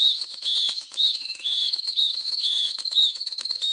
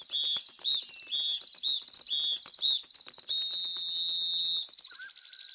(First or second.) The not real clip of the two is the first